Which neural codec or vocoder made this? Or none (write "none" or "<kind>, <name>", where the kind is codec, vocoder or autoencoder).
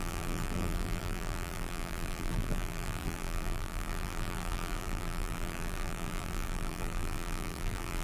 vocoder, BigVGAN v2